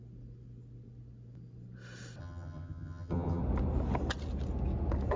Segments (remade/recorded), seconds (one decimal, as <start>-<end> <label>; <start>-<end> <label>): 0.0-2.2 recorded; 2.2-3.4 remade; 3.4-5.2 recorded